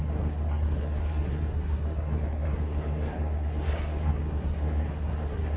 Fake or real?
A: fake